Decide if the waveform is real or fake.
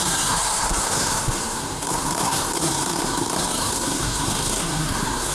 fake